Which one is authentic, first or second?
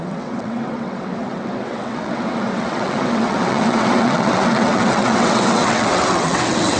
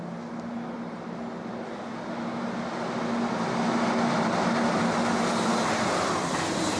second